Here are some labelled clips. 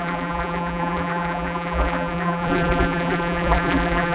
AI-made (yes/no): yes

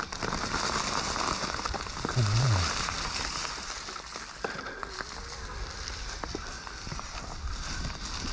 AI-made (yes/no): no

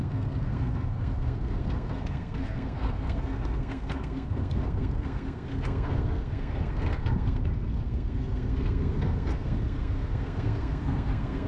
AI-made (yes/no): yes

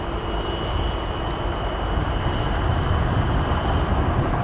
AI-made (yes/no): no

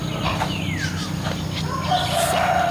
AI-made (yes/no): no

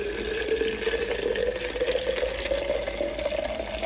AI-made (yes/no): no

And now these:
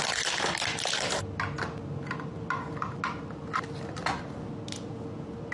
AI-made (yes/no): no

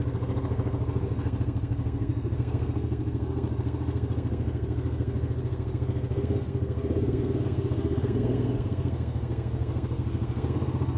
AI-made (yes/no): yes